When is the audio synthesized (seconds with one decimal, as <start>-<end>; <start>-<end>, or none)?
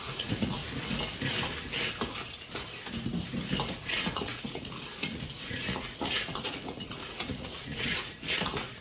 0.0-0.6; 3.7-8.8